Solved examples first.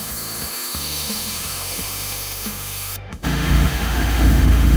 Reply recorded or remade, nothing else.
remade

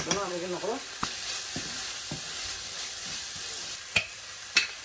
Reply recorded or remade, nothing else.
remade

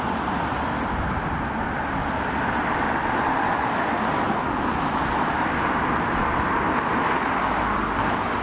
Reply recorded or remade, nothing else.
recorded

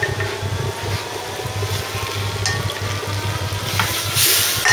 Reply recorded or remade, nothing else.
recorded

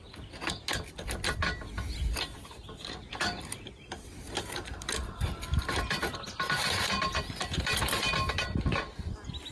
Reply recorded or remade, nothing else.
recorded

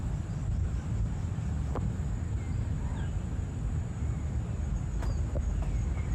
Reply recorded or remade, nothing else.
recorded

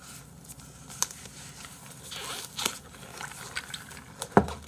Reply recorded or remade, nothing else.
recorded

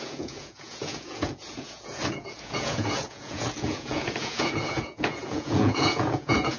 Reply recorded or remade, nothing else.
remade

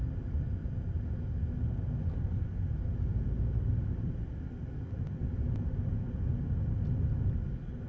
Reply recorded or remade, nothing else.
recorded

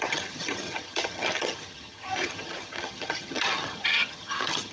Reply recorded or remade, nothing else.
remade